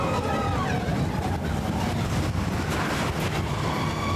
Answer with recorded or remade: recorded